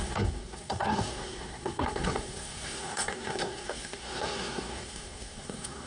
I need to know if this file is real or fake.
fake